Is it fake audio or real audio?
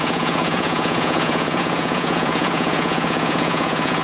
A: fake